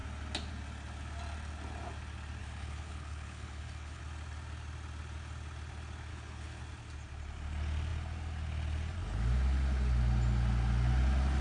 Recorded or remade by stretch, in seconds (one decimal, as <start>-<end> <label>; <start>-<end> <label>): 0.0-2.4 recorded; 2.4-4.0 remade; 4.0-6.1 recorded; 6.1-6.6 remade; 6.6-11.4 recorded